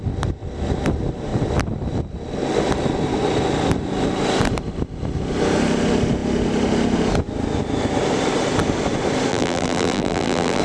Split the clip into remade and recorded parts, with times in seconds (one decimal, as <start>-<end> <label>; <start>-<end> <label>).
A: 0.0-9.3 recorded; 9.3-10.6 remade

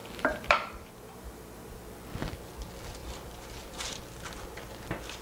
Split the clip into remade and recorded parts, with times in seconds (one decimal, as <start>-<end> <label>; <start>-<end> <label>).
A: 0.0-1.8 remade; 1.8-3.0 recorded; 3.0-4.0 remade; 4.0-5.2 recorded

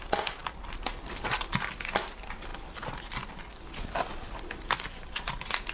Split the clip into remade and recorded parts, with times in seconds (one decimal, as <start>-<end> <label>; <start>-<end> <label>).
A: 0.0-5.7 recorded

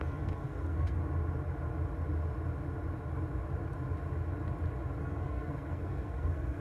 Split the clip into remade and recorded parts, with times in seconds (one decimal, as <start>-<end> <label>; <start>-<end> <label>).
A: 0.0-1.0 remade; 1.0-5.0 recorded; 5.0-6.6 remade

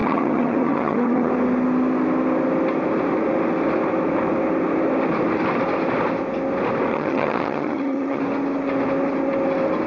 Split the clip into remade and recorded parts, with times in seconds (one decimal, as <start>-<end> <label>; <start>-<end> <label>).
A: 0.0-1.3 remade; 1.3-6.9 recorded; 6.9-8.2 remade; 8.2-9.9 recorded

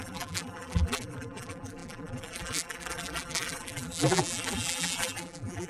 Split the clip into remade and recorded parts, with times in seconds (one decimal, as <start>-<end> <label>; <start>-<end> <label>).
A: 0.0-5.7 remade